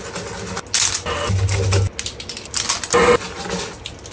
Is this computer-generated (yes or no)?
no